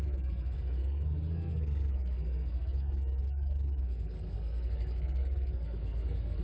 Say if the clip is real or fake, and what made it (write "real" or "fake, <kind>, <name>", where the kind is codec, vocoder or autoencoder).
fake, codec, SNAC